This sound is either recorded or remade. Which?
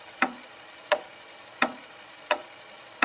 remade